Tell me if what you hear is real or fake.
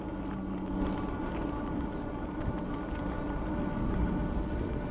real